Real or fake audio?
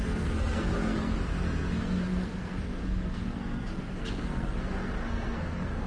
fake